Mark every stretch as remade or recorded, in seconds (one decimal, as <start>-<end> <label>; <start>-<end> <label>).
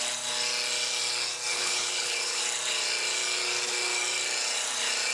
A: 0.0-1.5 recorded; 1.5-2.4 remade; 2.4-5.1 recorded